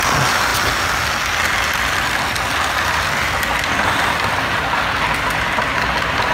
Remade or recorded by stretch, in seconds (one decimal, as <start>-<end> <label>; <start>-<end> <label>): 0.0-6.3 recorded